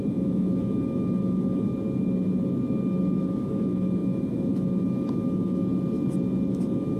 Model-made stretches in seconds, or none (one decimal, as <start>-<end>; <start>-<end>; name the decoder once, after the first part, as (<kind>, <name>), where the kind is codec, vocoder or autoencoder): 0.0-1.7 (autoencoder, DAC-VAE); 3.2-5.6; 6.5-7.0